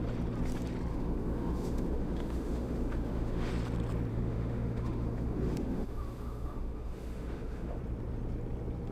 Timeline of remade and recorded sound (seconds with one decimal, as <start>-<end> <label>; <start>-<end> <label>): 0.0-0.9 recorded; 0.9-3.5 remade; 3.5-4.1 recorded; 4.1-7.8 remade; 7.8-8.9 recorded